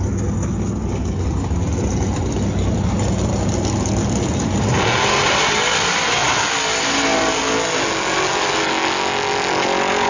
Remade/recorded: recorded